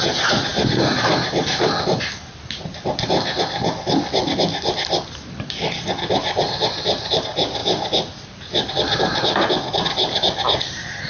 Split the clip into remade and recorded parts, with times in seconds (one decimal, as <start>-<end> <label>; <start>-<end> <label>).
0.0-11.1 recorded